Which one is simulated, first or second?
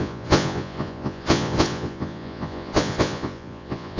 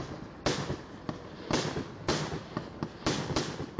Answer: first